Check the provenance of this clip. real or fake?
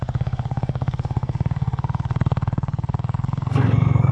fake